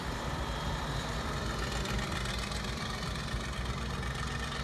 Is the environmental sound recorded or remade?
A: remade